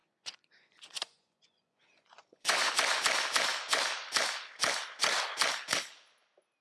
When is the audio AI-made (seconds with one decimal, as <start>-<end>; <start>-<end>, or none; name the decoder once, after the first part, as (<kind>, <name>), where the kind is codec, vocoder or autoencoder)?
0.0-2.7 (vocoder, Vocos)